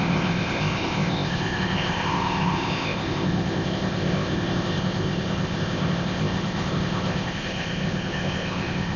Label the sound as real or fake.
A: fake